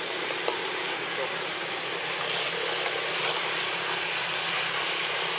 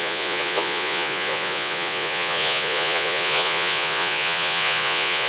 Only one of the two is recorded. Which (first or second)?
first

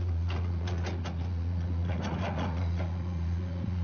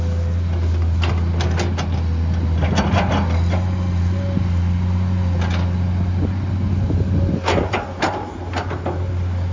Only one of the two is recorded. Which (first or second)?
second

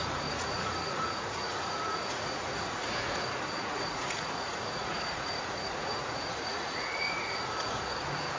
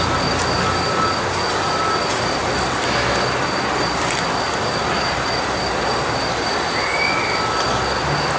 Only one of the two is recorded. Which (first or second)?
second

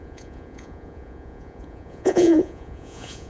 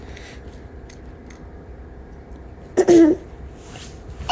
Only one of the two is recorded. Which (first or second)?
second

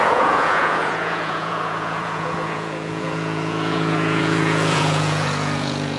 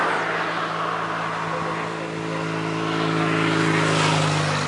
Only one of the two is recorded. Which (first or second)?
second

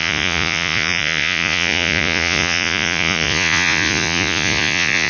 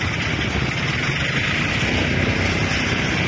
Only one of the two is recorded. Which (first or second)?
second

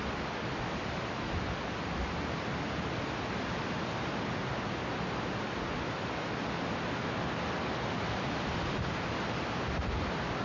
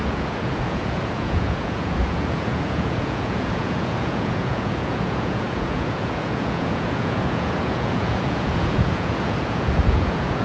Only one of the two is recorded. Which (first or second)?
first